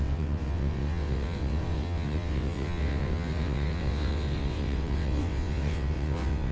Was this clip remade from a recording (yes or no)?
yes